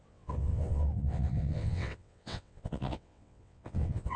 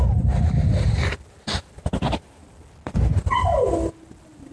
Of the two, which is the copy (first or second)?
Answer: first